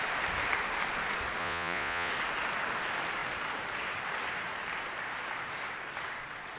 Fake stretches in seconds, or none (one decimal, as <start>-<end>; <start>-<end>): 1.4-2.1